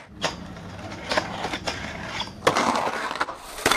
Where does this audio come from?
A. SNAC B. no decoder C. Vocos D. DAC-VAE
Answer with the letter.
B